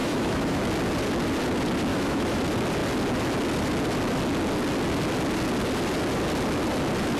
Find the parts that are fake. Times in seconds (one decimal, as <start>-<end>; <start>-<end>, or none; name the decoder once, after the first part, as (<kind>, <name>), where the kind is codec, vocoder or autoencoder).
0.0-0.6 (autoencoder, DAC-VAE); 1.9-2.4